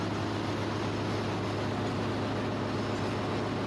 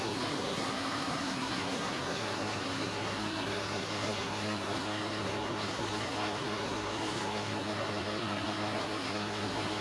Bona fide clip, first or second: first